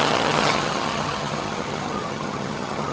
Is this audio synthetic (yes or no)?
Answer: yes